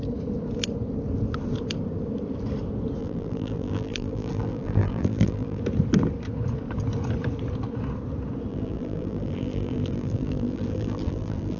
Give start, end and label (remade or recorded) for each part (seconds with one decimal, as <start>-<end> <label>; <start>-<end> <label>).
0.0-3.0 recorded; 3.0-5.6 remade; 5.6-8.5 recorded; 8.5-11.6 remade